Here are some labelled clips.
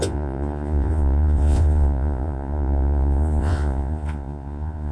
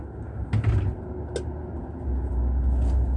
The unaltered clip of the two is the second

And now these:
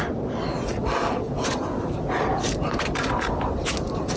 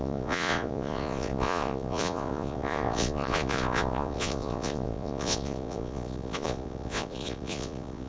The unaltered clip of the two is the first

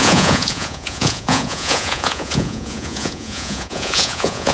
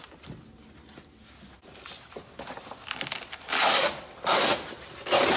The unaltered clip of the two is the second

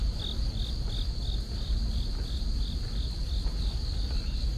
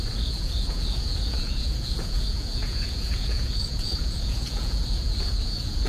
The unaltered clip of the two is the first